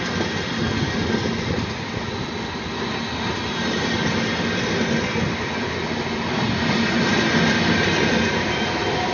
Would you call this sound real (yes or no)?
yes